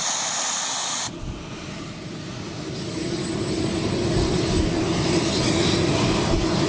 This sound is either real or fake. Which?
real